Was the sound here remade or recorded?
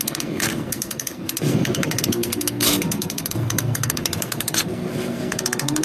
remade